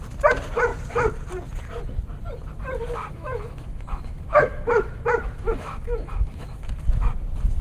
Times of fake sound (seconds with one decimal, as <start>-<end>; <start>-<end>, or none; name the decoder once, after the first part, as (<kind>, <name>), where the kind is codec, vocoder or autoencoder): 3.1-6.7 (autoencoder, DAC-VAE)